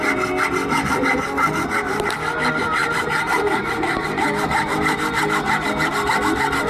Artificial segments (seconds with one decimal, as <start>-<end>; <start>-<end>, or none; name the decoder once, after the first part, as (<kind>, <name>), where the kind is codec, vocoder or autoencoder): 2.8-3.8 (vocoder, BigVGAN v2)